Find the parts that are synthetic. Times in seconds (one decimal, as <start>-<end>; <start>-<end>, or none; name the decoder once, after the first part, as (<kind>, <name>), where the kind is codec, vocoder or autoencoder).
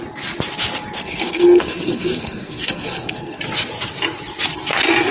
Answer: 1.0-3.4 (codec, SNAC)